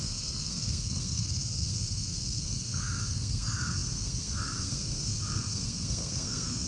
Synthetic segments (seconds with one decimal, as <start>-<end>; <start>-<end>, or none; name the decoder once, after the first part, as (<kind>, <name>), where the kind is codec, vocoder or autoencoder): 0.0-6.7 (codec, SNAC)